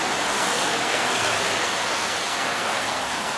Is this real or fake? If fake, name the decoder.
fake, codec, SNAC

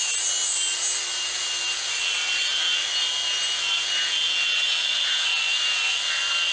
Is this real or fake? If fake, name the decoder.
real